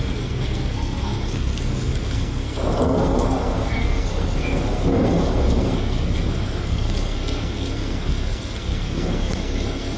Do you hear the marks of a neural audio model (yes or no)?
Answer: yes